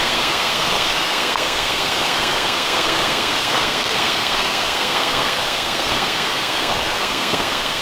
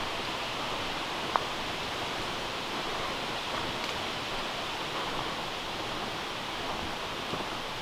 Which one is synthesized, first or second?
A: first